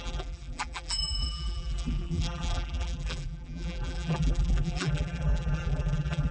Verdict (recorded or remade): remade